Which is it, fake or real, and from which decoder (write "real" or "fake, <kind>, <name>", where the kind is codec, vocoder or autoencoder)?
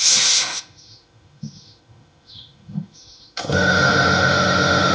fake, autoencoder, DAC-VAE